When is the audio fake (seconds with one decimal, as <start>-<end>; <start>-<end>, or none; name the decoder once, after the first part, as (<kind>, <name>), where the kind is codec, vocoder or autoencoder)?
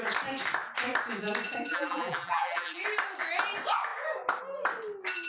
1.7-2.8 (vocoder, BigVGAN v2)